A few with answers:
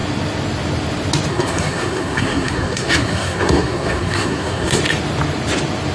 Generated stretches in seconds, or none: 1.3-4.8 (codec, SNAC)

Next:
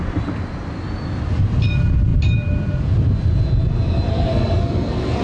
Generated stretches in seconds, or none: 4.1-5.2 (codec, SNAC)